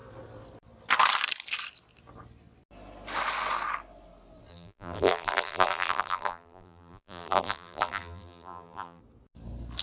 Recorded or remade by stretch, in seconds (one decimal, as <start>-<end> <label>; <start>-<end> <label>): 0.0-4.5 recorded; 4.5-9.0 remade; 9.0-9.8 recorded